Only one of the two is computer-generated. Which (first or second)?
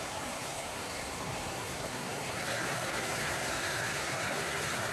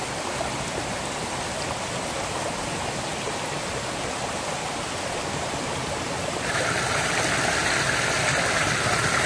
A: first